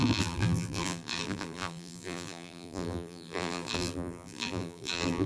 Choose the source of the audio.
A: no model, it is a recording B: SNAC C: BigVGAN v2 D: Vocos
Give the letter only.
C